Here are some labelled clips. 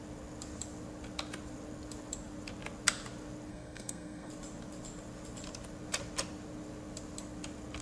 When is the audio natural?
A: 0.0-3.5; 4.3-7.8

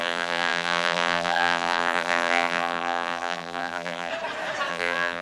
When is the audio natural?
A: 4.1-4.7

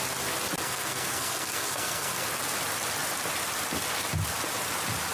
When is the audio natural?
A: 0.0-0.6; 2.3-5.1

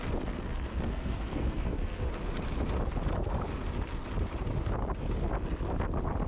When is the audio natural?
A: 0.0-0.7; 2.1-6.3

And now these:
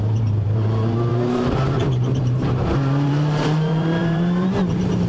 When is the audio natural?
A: none

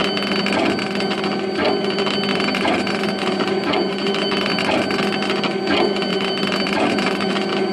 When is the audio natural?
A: 0.0-2.3; 4.5-6.1; 7.3-7.7

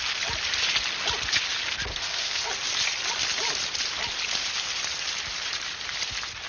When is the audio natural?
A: 0.0-1.9; 2.5-6.5